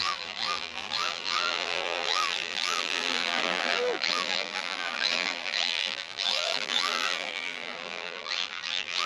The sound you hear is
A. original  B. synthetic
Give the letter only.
B